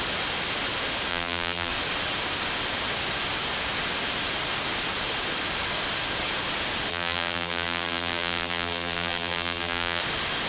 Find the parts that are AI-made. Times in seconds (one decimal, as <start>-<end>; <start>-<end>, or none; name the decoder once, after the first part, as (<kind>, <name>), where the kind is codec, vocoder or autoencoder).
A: 1.1-1.7 (vocoder, BigVGAN v2); 6.9-10.0